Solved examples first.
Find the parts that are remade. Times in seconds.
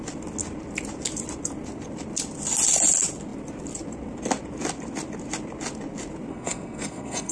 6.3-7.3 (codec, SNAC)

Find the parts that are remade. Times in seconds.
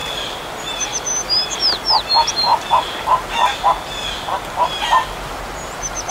0.6-2.5 (vocoder, BigVGAN v2); 5.3-6.1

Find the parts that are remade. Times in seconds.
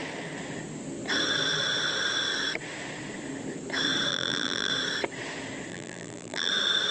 4.1-4.7 (vocoder, BigVGAN v2); 5.7-6.5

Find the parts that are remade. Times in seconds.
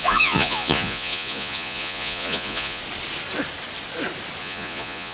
0.0-2.8 (vocoder, Vocos); 4.4-5.1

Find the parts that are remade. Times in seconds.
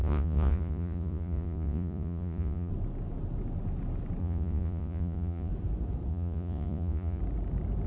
0.0-2.7 (vocoder, Vocos); 4.2-5.5; 6.1-7.2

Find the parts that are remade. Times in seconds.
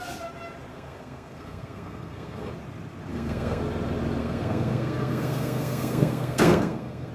0.7-2.5 (codec, SNAC); 3.1-3.6; 4.2-7.1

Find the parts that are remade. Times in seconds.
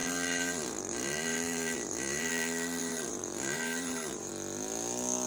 0.0-2.3 (vocoder, BigVGAN v2); 2.8-4.3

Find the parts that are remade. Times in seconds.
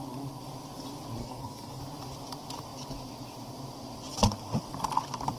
1.2-1.8 (codec, SNAC)